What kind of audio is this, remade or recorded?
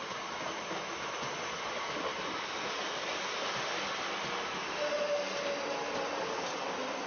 recorded